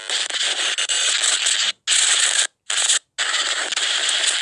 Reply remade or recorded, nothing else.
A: recorded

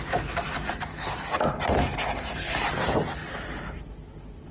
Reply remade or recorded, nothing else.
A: recorded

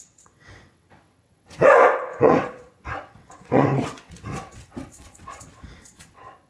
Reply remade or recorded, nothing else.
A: remade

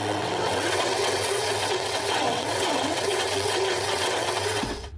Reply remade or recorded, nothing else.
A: remade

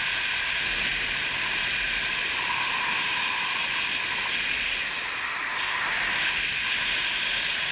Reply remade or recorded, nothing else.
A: recorded